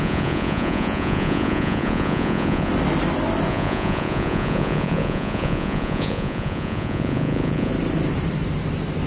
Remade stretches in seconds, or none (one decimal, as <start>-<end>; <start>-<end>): 0.0-2.7; 3.5-7.7